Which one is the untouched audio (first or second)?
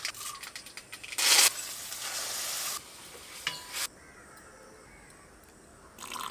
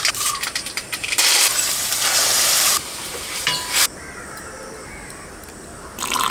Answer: first